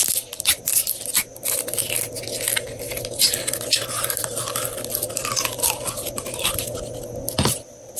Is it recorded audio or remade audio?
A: recorded